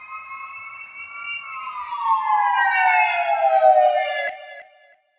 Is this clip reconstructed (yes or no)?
no